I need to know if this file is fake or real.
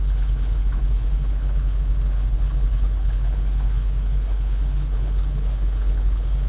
fake